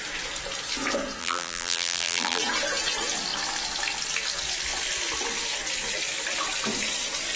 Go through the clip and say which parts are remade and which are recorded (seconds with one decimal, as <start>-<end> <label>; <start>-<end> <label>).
0.0-1.2 recorded; 1.2-2.4 remade; 2.4-7.4 recorded